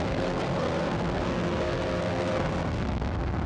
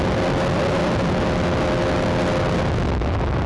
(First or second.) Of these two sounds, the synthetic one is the first